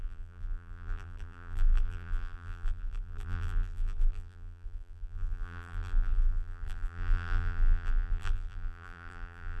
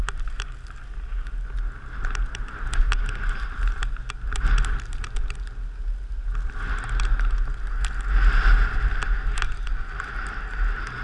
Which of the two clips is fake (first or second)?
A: first